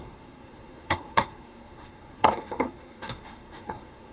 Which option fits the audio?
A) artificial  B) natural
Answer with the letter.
A